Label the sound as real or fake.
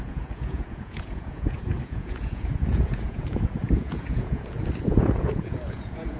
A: fake